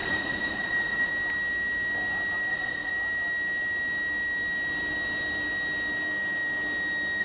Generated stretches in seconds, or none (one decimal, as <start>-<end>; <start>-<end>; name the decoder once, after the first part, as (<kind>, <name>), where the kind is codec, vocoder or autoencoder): 0.0-1.1 (vocoder, Vocos); 2.5-2.9

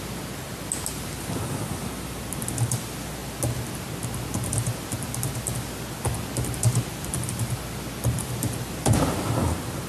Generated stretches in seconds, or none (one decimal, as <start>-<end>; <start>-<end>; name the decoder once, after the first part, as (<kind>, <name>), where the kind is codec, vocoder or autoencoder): none

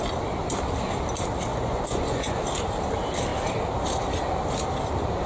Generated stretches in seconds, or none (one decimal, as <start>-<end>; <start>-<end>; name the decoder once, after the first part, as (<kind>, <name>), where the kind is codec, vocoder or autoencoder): 1.5-2.4 (vocoder, Vocos)

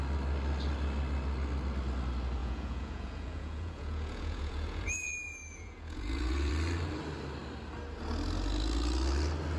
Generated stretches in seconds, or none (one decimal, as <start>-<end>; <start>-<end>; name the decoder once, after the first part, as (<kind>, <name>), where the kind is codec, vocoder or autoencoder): 2.4-6.5 (vocoder, Vocos)

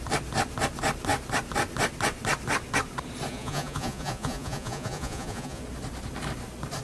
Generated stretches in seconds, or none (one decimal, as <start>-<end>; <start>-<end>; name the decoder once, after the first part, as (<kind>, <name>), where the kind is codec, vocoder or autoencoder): 3.3-5.6 (vocoder, Vocos)

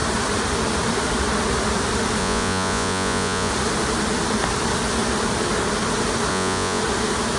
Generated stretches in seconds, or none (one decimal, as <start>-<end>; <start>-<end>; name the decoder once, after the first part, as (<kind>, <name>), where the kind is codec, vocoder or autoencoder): 2.2-3.5 (vocoder, Vocos); 6.3-6.8

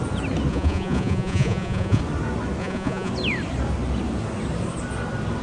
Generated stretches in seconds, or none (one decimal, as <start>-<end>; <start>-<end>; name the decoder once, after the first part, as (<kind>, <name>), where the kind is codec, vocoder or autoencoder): 0.5-2.0 (vocoder, Vocos); 2.6-3.1